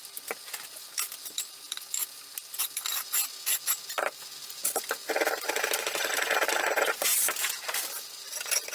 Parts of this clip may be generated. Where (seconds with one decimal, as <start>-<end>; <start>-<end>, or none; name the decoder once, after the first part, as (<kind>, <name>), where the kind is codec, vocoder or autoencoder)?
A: none